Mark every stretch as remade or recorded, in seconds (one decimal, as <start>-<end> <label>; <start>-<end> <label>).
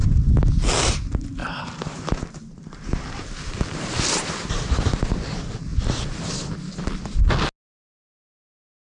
0.0-1.4 recorded; 1.4-5.3 remade; 5.3-5.7 recorded; 5.7-6.3 remade; 6.3-8.9 recorded